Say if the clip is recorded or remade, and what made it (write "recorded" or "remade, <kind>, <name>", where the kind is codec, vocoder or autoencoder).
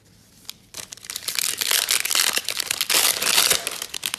recorded